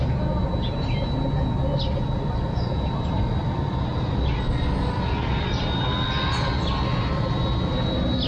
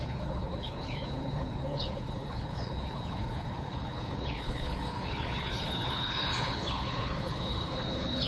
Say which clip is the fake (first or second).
second